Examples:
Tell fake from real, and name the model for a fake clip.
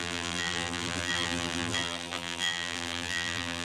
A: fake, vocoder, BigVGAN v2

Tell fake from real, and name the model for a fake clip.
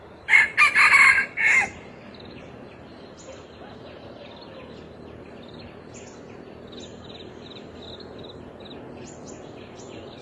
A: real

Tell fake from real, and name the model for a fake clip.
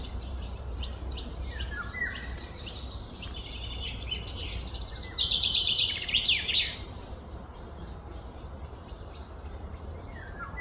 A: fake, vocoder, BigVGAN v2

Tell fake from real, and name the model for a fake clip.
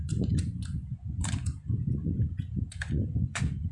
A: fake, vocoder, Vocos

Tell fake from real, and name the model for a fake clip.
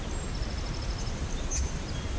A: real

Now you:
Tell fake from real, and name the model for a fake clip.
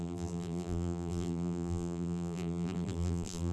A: fake, vocoder, BigVGAN v2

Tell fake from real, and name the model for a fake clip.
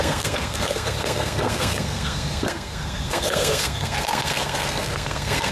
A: fake, codec, SNAC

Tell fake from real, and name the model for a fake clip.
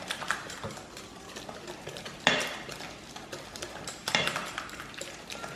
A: fake, vocoder, BigVGAN v2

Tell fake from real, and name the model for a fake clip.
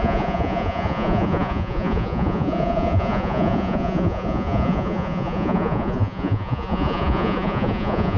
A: fake, vocoder, Vocos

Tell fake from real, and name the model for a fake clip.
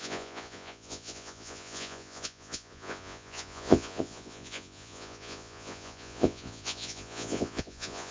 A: fake, vocoder, Vocos